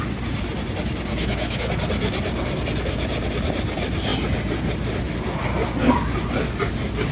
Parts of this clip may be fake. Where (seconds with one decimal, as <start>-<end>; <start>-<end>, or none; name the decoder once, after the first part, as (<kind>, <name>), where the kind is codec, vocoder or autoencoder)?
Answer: 1.1-1.7 (autoencoder, DAC-VAE)